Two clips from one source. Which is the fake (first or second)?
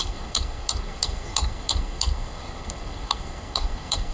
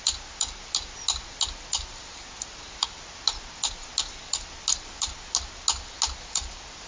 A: first